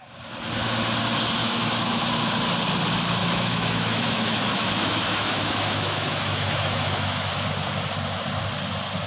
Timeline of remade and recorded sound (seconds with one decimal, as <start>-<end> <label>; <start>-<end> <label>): 0.0-1.4 recorded; 1.4-2.1 remade; 2.1-3.2 recorded; 3.2-7.3 remade; 7.3-9.1 recorded